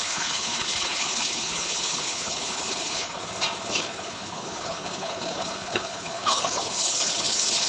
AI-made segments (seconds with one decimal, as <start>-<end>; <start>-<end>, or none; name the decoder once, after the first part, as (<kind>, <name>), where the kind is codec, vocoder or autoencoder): 0.0-3.2 (codec, HILCodec); 3.7-7.7

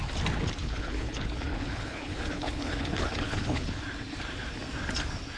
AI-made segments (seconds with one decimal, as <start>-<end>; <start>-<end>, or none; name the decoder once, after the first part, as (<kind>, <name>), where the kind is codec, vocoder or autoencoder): 0.6-3.8 (codec, HILCodec)

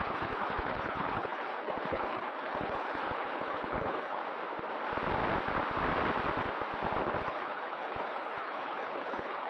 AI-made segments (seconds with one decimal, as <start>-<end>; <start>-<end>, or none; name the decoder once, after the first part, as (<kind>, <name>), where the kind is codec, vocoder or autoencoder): 0.0-4.2 (codec, HILCodec); 7.2-9.5

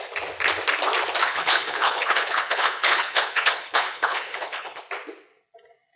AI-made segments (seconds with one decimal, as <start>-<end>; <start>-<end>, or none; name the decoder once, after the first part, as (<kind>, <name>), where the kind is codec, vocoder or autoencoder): 1.2-4.8 (codec, HILCodec)

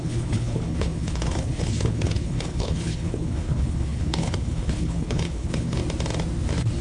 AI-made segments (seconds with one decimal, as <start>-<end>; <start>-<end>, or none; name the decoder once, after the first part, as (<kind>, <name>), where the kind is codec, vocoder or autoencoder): 0.0-5.8 (codec, HILCodec)